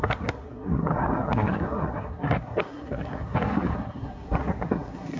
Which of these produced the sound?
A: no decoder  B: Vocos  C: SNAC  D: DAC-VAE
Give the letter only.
C